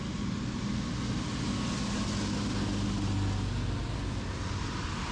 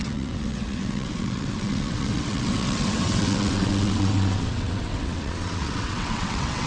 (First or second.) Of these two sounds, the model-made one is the second